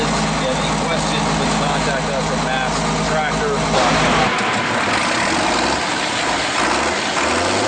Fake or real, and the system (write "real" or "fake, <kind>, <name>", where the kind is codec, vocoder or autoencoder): real